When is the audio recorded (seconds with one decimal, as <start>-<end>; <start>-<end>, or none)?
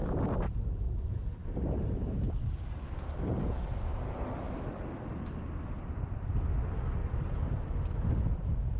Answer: 0.0-7.0; 7.7-8.8